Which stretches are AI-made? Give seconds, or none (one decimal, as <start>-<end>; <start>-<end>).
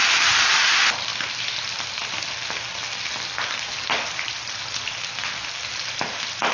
none